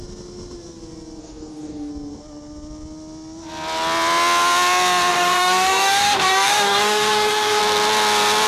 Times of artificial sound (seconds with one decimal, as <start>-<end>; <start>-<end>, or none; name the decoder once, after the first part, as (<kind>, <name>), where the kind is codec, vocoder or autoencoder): 1.2-1.9 (codec, DAC); 5.1-7.6